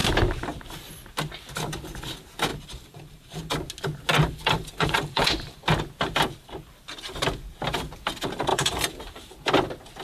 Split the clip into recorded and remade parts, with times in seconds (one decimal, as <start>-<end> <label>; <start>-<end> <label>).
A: 0.0-2.5 recorded; 2.5-3.5 remade; 3.5-4.2 recorded; 4.2-5.6 remade; 5.6-8.5 recorded; 8.5-9.3 remade; 9.3-10.0 recorded